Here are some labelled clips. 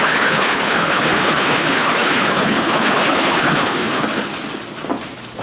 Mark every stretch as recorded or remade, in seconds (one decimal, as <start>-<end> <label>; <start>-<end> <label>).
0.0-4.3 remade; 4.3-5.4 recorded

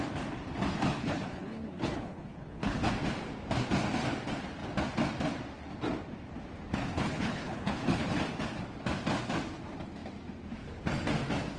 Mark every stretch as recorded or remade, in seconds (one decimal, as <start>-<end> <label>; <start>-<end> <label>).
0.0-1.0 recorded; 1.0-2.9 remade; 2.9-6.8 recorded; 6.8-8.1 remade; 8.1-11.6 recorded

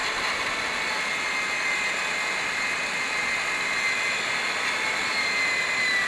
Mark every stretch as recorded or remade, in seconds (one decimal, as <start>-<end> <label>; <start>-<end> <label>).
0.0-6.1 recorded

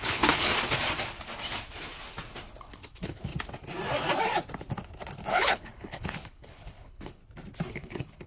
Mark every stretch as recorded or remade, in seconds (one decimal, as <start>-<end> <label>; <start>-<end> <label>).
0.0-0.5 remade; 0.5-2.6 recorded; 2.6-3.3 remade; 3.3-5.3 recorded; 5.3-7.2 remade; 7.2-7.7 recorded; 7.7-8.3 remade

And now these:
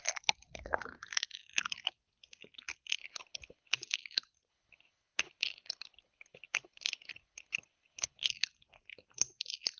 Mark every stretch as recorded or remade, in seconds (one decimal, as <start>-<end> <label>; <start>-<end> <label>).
0.0-3.0 recorded; 3.0-3.7 remade; 3.7-4.5 recorded; 4.5-8.3 remade; 8.3-9.8 recorded

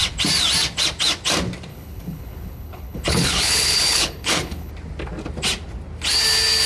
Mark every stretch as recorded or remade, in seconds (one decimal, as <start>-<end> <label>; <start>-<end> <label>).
0.0-1.7 recorded; 1.7-4.7 remade; 4.7-6.7 recorded